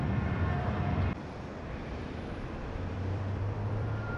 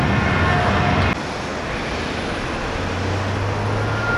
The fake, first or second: first